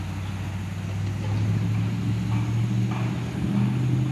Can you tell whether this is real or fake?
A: real